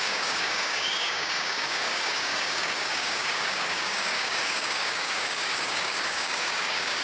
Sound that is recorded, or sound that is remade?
remade